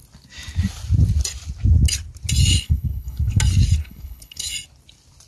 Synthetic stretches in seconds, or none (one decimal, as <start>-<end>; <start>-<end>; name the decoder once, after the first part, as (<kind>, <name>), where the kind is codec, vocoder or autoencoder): 2.5-3.4 (codec, HILCodec); 3.8-4.5